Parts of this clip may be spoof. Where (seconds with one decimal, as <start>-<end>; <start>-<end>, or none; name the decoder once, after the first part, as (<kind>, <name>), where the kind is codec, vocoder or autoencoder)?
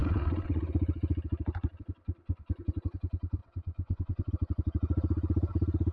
0.0-0.7 (vocoder, WaveNeXt); 3.4-4.3